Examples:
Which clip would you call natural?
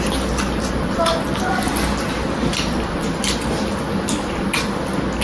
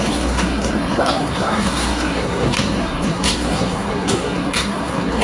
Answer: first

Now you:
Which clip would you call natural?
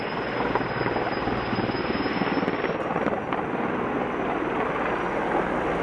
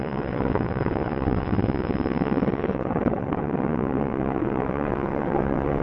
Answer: first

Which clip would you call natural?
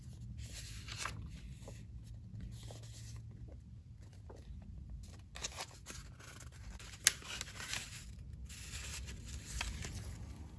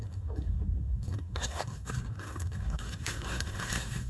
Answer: first